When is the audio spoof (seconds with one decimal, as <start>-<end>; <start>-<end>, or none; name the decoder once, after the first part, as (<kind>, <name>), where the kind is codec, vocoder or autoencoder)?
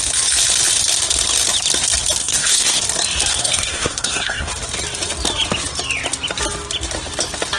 2.2-2.8 (codec, SNAC); 3.3-4.5